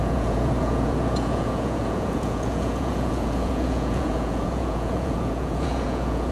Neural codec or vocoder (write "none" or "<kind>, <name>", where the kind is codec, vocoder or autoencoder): vocoder, Vocos